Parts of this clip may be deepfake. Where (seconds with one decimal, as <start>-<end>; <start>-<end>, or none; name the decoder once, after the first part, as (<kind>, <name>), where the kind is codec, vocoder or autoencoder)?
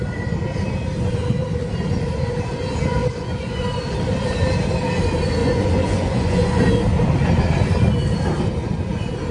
3.0-3.6 (vocoder, Vocos); 5.4-6.6